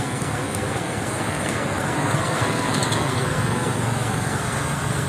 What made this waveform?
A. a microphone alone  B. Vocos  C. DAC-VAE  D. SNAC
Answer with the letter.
D